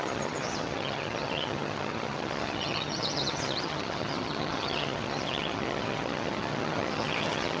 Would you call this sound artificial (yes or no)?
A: yes